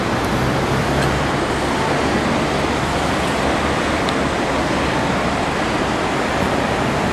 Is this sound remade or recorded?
recorded